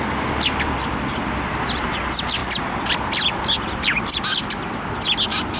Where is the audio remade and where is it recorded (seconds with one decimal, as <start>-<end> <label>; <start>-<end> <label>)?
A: 0.0-2.4 recorded; 2.4-4.2 remade; 4.2-5.6 recorded